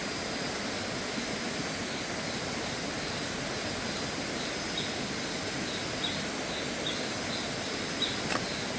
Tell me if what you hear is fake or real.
real